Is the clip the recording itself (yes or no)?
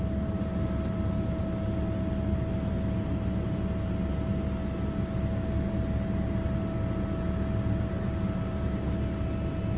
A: yes